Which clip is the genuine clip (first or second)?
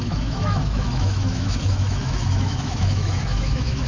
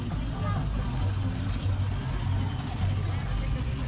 second